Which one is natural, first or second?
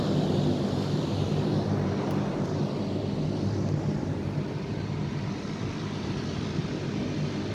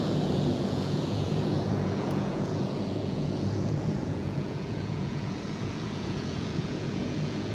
first